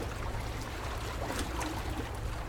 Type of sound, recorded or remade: recorded